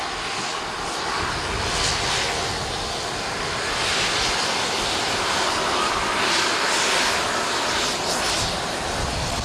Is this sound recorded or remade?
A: recorded